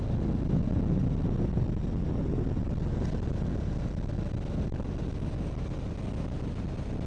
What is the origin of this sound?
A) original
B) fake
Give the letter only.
A